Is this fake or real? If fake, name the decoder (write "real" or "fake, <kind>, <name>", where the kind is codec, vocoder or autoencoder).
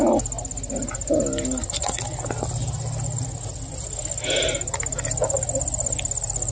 real